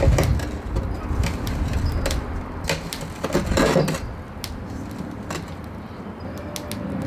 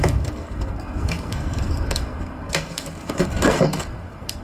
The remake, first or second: second